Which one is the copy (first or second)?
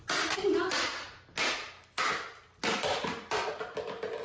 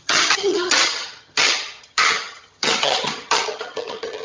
second